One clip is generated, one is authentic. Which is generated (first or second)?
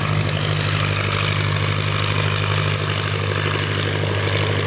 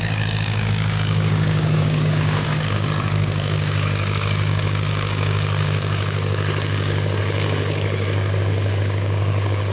second